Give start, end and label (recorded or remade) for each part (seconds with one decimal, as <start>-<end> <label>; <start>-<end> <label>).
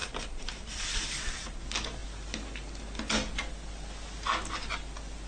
0.0-1.6 remade; 1.6-5.3 recorded